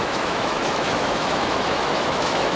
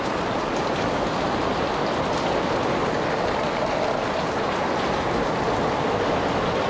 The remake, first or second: first